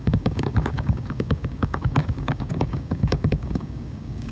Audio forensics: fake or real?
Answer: fake